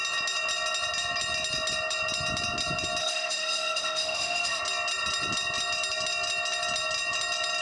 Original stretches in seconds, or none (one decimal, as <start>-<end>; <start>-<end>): 0.0-3.0; 4.6-7.6